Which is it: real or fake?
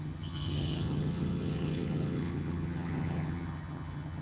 fake